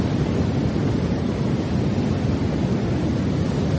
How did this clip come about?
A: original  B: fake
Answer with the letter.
A